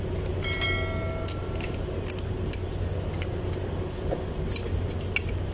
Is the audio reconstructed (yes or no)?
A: no